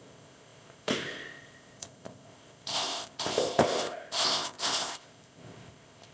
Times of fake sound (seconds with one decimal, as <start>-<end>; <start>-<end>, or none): 0.0-6.1